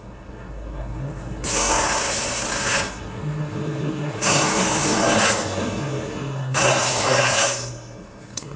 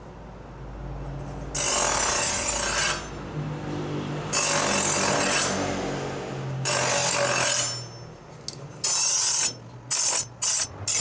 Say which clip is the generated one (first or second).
first